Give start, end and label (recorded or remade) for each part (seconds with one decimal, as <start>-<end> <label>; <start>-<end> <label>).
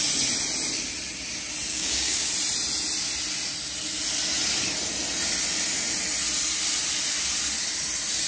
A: 0.0-1.7 recorded; 1.7-2.3 remade; 2.3-8.3 recorded